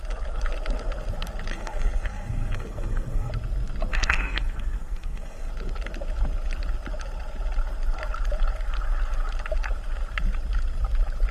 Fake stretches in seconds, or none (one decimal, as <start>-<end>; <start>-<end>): 1.5-3.3; 3.9-5.5